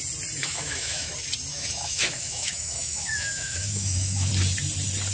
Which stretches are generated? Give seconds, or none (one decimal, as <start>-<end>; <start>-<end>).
0.4-1.1; 1.5-4.3